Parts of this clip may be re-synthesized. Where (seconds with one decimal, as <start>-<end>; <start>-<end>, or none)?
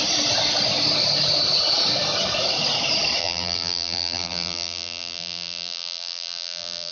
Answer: 3.2-6.9